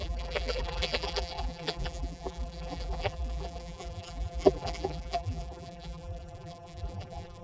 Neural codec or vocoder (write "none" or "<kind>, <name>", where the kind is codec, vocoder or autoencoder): vocoder, BigVGAN v2